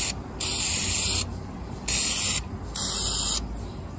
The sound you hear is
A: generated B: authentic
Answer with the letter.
B